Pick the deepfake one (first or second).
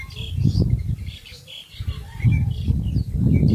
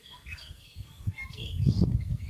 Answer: second